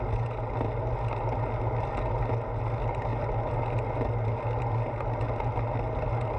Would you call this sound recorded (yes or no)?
yes